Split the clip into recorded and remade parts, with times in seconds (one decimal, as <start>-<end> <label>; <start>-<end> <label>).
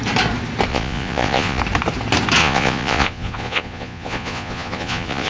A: 0.0-0.7 recorded; 0.7-1.6 remade; 1.6-2.4 recorded; 2.4-5.3 remade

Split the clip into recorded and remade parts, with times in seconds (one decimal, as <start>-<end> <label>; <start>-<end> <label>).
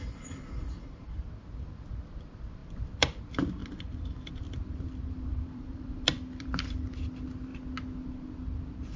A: 0.0-2.6 recorded; 2.6-3.2 remade; 3.2-3.6 recorded; 3.6-4.3 remade; 4.3-5.3 recorded; 5.3-6.5 remade; 6.5-9.0 recorded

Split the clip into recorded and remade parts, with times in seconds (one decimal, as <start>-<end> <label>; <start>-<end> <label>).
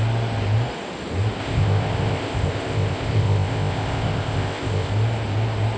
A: 0.0-1.4 recorded; 1.4-4.9 remade; 4.9-5.8 recorded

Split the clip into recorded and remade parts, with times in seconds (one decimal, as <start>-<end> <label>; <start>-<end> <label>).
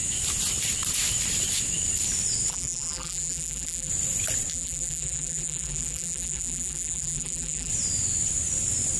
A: 0.0-2.5 recorded; 2.5-3.9 remade; 3.9-4.5 recorded; 4.5-7.7 remade; 7.7-9.0 recorded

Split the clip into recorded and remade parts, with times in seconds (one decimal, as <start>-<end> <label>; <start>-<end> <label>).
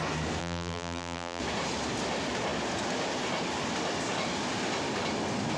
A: 0.0-0.4 recorded; 0.4-1.4 remade; 1.4-5.6 recorded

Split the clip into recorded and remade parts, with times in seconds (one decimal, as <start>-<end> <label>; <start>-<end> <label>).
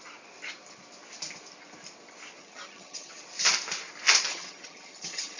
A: 0.0-2.4 recorded; 2.4-3.2 remade; 3.2-4.3 recorded; 4.3-5.4 remade